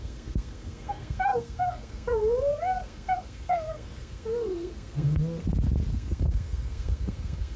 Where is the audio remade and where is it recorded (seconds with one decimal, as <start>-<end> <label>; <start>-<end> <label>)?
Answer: 0.0-5.2 remade; 5.2-5.9 recorded; 5.9-7.6 remade